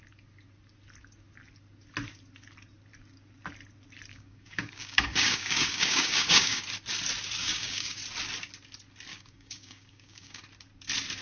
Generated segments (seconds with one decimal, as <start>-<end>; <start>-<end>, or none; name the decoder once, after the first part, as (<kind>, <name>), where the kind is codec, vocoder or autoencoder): 4.1-6.6 (codec, DAC); 7.4-8.0; 9.1-10.4